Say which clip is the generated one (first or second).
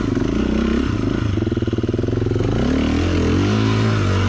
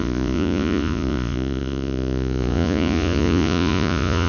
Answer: second